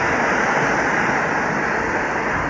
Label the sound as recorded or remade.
recorded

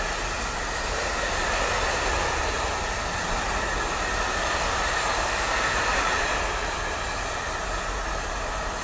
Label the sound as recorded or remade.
recorded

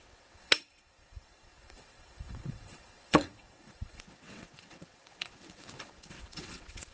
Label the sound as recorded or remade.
remade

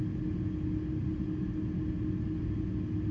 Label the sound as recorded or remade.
recorded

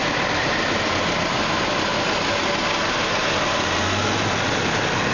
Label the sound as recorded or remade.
recorded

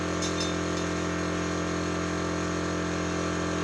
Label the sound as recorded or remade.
recorded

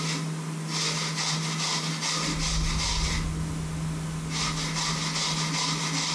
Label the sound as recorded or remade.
recorded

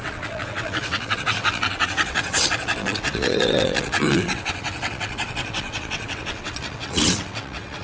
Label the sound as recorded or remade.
remade